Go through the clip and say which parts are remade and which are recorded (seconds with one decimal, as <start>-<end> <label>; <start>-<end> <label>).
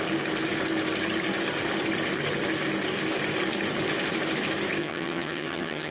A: 0.0-4.8 recorded; 4.8-5.9 remade